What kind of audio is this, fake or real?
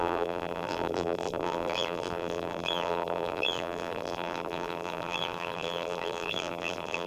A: fake